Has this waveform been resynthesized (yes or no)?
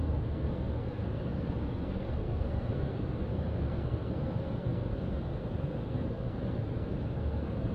yes